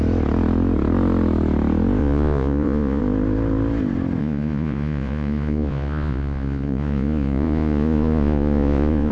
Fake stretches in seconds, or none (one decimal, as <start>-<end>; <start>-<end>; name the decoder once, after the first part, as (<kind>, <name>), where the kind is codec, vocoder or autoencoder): 2.0-3.0 (vocoder, Vocos); 4.2-9.1